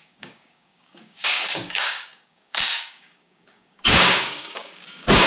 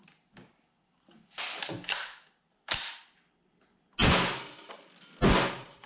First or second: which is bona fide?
second